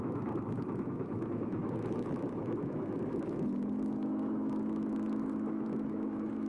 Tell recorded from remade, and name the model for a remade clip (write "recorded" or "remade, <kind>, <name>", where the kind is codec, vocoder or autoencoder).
remade, autoencoder, DAC-VAE